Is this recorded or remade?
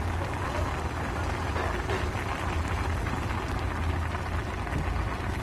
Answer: recorded